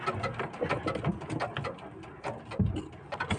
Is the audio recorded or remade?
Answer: recorded